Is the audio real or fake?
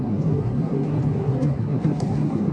fake